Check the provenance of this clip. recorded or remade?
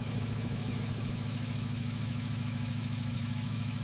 remade